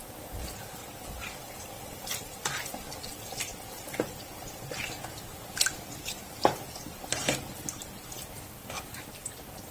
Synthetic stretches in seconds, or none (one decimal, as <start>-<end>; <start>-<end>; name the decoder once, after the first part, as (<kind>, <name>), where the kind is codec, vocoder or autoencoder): none